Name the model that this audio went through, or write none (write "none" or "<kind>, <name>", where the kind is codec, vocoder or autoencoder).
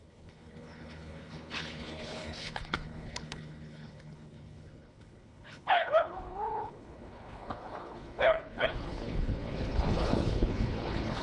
codec, HILCodec